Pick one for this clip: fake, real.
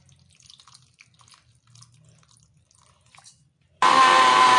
real